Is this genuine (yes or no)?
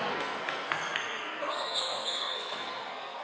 no